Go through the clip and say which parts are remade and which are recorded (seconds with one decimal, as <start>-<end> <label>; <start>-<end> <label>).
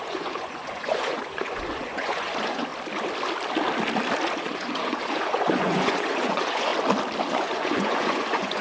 0.0-2.7 remade; 2.7-4.4 recorded; 4.4-6.7 remade; 6.7-7.3 recorded; 7.3-8.6 remade